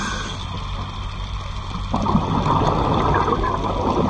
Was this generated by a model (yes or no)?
no